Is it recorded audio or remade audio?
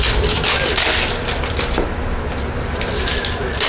recorded